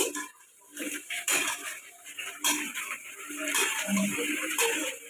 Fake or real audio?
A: fake